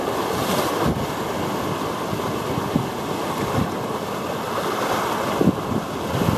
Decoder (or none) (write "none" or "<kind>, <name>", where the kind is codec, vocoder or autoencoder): none